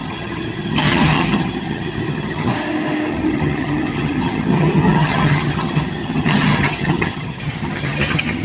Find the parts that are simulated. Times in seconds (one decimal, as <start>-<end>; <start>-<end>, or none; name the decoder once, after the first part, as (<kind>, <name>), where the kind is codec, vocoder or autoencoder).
0.0-2.5 (vocoder, HiFi-GAN); 3.1-8.4